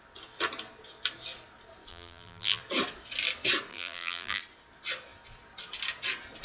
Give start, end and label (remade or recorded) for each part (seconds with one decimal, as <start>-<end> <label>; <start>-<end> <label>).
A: 0.0-1.9 recorded; 1.9-2.6 remade; 2.6-3.7 recorded; 3.7-4.4 remade; 4.4-6.4 recorded